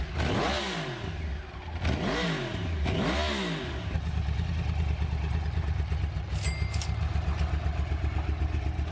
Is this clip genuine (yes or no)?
yes